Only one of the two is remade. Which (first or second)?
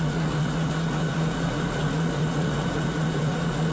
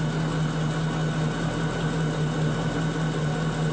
first